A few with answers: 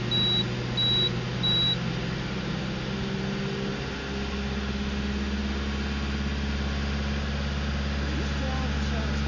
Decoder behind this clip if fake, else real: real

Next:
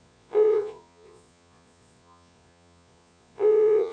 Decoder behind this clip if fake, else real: fake, vocoder, Vocos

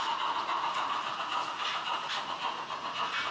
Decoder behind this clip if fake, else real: fake, vocoder, Vocos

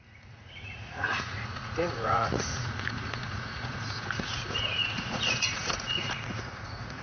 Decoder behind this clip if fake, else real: fake, vocoder, Vocos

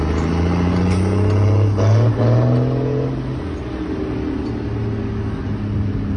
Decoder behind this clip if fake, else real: real